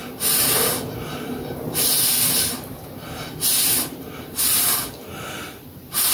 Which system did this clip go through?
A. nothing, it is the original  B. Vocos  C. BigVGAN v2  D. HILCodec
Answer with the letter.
C